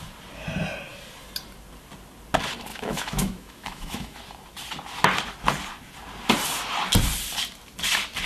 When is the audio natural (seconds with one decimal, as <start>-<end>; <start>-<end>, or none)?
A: 0.0-2.7; 4.2-8.3